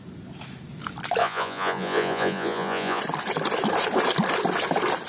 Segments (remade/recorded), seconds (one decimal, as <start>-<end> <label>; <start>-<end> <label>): 0.0-1.2 recorded; 1.2-3.0 remade; 3.0-5.1 recorded